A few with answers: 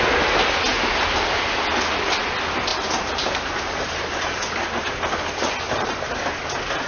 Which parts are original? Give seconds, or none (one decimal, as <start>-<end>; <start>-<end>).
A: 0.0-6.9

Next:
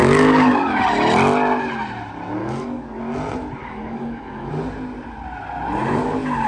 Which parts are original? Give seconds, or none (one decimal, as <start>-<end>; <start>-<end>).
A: 0.8-2.4; 3.0-3.6; 4.5-6.5

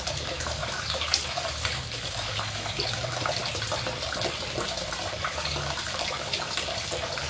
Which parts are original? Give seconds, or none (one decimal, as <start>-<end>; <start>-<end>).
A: 3.4-5.1

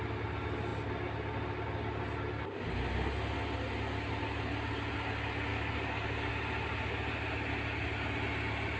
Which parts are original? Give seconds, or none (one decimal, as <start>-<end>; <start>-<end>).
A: 0.0-5.5; 6.3-8.8

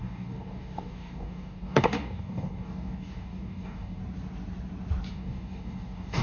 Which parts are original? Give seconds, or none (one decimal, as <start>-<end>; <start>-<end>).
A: 4.0-5.1